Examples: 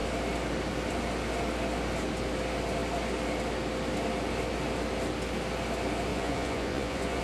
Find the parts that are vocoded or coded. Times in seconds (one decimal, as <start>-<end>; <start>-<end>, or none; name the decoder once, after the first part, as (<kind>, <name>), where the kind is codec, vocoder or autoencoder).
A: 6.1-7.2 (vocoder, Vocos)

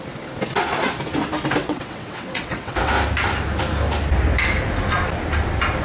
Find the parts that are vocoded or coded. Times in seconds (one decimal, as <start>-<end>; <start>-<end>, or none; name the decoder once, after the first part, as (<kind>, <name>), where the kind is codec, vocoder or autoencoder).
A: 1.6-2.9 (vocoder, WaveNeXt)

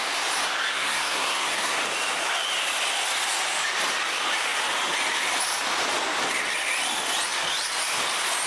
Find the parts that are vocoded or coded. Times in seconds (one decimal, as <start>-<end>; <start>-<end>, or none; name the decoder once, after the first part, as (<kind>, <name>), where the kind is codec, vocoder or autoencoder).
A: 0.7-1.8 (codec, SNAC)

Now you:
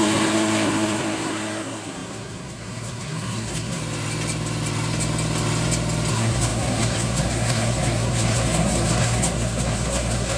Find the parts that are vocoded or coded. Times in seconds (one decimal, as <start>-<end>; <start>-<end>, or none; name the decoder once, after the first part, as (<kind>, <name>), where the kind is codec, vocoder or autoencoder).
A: 0.0-3.8 (codec, SNAC); 6.1-10.4